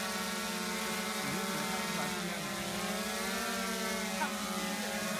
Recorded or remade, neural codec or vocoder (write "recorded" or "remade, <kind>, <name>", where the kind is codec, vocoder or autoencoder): recorded